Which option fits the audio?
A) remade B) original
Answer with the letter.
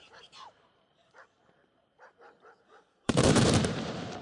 A